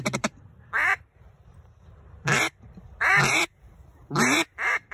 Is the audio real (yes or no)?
no